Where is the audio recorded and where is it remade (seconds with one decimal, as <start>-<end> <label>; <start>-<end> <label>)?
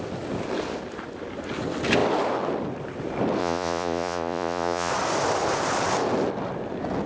0.0-3.4 recorded; 3.4-4.9 remade; 4.9-7.1 recorded